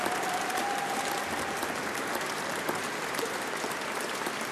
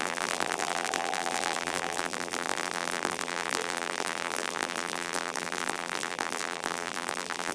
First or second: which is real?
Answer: first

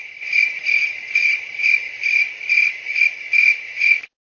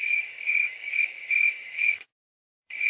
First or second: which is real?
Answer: first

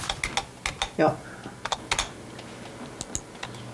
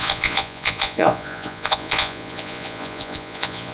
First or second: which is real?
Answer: first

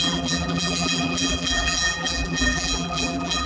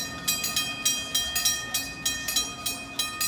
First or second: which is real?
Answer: second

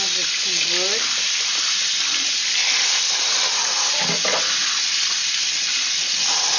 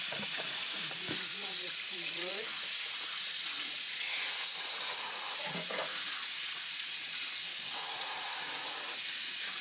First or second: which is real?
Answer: first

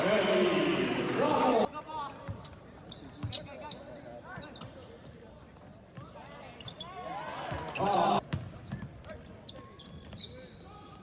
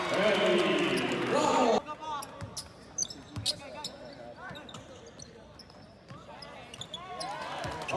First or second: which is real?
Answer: second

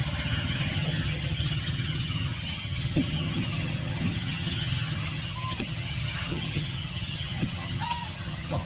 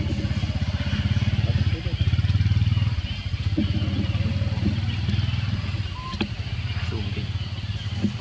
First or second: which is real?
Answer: second